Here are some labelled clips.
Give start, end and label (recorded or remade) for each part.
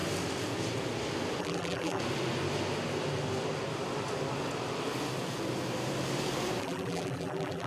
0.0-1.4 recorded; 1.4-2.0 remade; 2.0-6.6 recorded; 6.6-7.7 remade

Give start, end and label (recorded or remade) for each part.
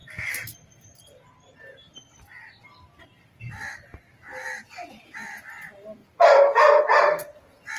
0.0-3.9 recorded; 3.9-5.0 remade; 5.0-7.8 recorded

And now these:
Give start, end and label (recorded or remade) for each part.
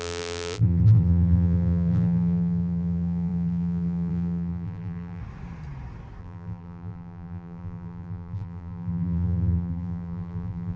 0.0-5.2 remade; 5.2-6.2 recorded; 6.2-10.8 remade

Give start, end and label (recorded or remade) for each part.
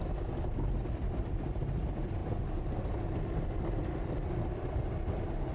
0.0-5.5 remade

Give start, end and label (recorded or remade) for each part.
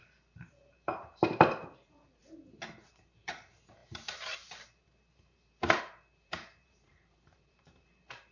0.0-2.2 remade; 2.2-2.9 recorded; 2.9-8.3 remade